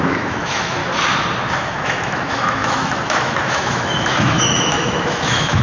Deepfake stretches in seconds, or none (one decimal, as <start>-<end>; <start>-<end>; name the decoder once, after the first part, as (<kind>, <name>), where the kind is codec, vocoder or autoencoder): 0.0-0.8 (autoencoder, DAC-VAE); 1.7-5.6